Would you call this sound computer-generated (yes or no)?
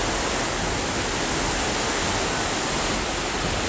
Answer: no